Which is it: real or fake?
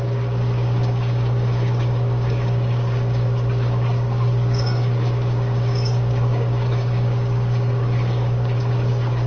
fake